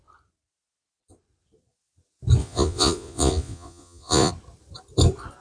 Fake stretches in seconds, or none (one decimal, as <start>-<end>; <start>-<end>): 2.4-4.3